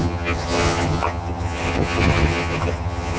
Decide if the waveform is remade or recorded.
remade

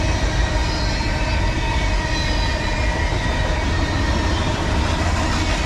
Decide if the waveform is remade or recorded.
recorded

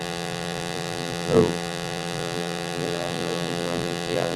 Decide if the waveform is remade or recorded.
remade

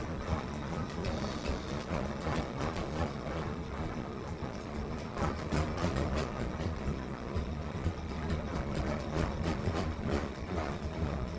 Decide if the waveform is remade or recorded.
remade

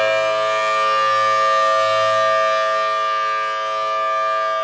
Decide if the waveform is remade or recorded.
recorded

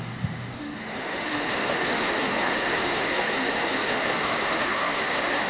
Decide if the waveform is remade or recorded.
remade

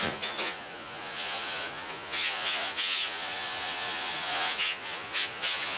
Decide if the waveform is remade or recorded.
remade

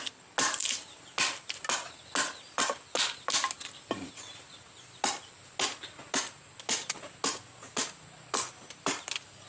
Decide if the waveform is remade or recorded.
recorded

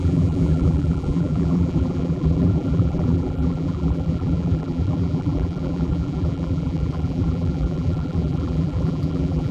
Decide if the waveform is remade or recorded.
remade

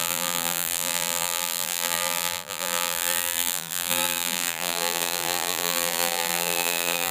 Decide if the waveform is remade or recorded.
remade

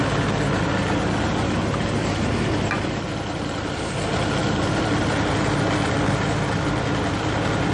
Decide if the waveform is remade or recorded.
recorded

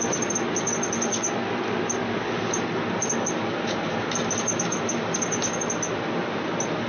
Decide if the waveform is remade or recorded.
recorded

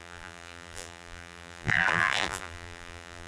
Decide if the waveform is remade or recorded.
remade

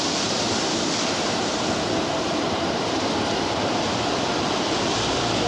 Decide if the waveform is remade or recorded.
remade